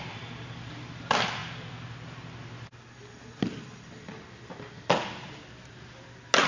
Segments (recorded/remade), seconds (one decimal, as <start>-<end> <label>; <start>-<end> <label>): 0.0-6.5 recorded